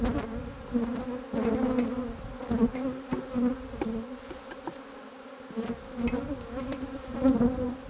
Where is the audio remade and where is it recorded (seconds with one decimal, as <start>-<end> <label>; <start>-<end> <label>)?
0.0-7.9 recorded